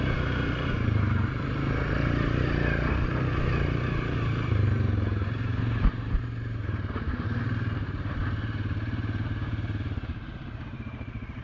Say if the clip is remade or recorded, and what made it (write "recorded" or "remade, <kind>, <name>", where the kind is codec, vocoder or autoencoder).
remade, vocoder, BigVGAN v2